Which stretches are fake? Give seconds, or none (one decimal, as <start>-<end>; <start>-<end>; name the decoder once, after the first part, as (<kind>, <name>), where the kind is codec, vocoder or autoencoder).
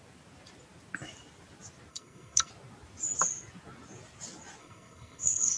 1.9-2.5 (codec, SNAC); 4.6-5.6